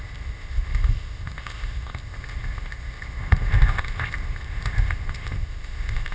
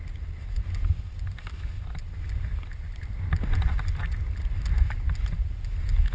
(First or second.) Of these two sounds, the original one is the second